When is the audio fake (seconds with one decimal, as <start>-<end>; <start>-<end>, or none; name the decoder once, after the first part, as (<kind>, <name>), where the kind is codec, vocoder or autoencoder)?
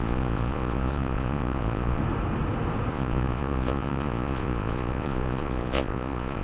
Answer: 0.0-2.0 (vocoder, Vocos); 2.9-6.4